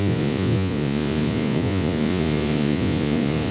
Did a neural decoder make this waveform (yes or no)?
yes